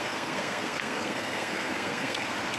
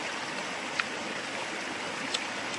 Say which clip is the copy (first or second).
first